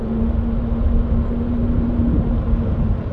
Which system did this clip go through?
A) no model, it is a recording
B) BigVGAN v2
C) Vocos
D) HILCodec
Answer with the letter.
A